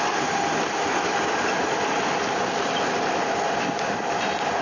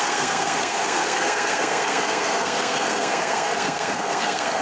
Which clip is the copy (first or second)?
second